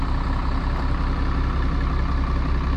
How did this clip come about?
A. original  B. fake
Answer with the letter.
A